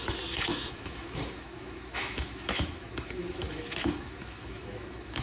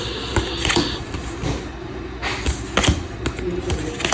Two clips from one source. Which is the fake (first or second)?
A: first